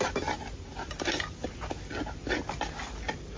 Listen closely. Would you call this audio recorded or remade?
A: recorded